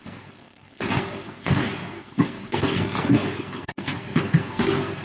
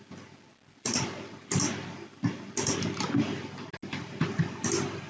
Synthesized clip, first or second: first